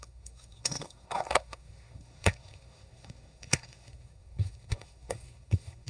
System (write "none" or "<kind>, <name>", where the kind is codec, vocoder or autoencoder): codec, SNAC